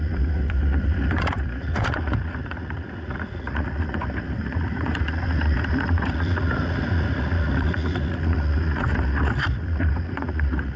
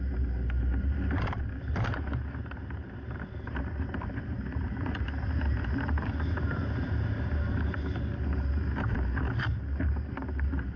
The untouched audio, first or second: second